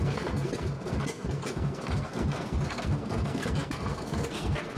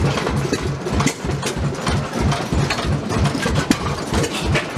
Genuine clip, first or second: second